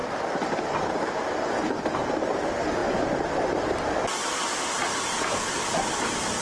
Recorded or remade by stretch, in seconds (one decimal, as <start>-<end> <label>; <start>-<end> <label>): 0.0-6.4 recorded